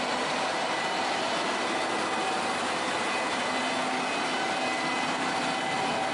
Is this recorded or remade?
recorded